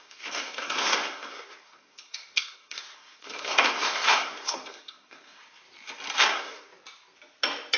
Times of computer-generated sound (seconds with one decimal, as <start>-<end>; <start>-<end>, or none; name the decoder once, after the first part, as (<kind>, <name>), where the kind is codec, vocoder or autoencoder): 0.0-5.4 (codec, SNAC); 6.2-6.7